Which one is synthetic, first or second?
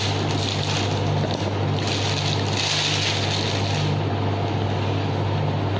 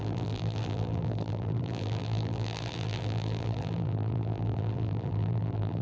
second